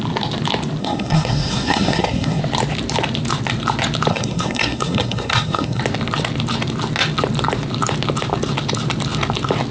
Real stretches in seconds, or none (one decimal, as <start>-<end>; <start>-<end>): 0.0-0.8; 2.4-4.1; 5.8-9.7